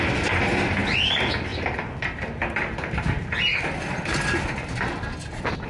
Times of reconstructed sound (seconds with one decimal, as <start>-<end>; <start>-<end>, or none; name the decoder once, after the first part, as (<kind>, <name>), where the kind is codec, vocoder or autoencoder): none